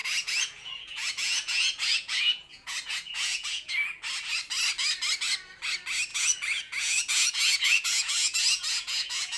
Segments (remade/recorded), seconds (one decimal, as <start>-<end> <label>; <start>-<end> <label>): 0.0-3.7 remade; 3.7-6.1 recorded; 6.1-9.4 remade